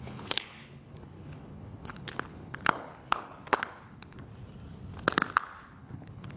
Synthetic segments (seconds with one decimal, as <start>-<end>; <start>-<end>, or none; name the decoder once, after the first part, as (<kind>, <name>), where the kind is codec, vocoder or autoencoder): 0.0-4.3 (codec, HILCodec); 5.7-6.4